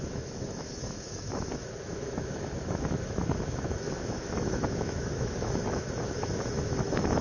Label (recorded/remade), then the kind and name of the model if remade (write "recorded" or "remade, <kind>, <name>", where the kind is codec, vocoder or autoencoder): remade, autoencoder, DAC-VAE